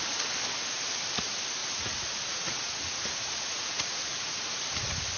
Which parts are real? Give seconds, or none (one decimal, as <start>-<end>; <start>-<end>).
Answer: 0.0-1.6; 4.6-5.2